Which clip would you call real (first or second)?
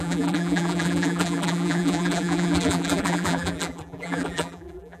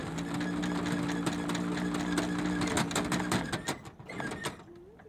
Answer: second